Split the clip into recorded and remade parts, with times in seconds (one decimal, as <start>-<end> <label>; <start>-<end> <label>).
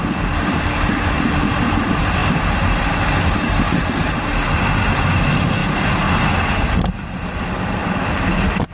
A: 0.0-8.7 recorded